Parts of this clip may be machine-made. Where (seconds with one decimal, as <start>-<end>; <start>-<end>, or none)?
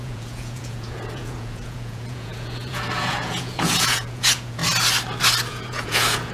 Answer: 0.0-4.6; 5.5-6.3